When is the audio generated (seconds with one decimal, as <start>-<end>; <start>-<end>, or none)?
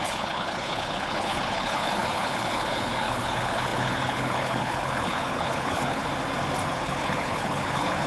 0.0-6.0; 6.7-8.1